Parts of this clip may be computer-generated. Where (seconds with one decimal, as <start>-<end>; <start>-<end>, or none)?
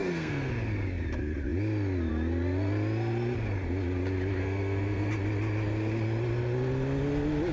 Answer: 0.0-0.5; 4.4-5.1